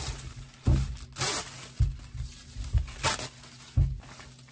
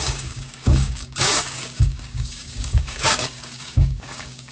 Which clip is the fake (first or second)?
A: second